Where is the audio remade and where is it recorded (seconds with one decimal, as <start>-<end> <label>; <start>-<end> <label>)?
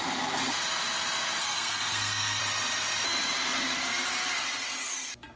0.0-1.4 recorded; 1.4-2.4 remade; 2.4-5.4 recorded